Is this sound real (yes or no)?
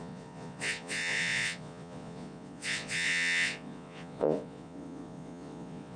no